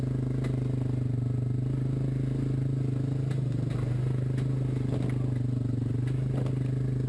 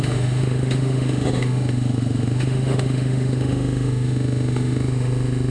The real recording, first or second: first